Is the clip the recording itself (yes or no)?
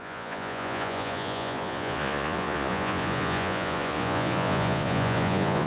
no